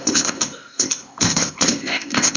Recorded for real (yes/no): no